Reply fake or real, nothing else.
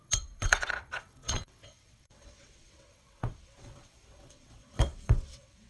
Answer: fake